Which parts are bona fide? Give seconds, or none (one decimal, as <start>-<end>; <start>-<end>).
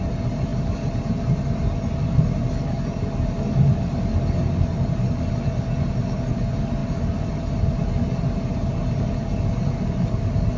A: 0.0-10.6